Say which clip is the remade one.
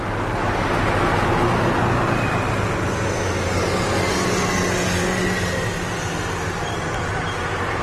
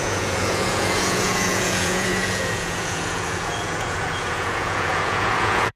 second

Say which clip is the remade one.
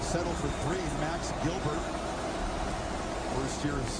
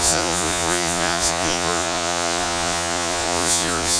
second